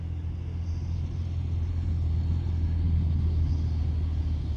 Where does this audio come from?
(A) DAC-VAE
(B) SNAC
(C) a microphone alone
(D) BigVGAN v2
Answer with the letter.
C